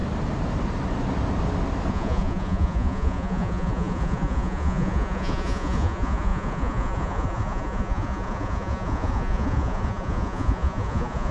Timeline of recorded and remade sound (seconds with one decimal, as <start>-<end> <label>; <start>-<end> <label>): 0.0-1.9 recorded; 1.9-11.3 remade